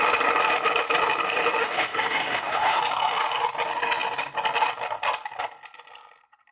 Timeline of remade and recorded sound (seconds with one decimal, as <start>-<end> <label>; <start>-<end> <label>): 0.0-1.6 recorded; 1.6-2.8 remade; 2.8-6.5 recorded